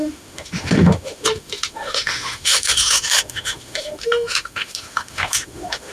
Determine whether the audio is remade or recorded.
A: remade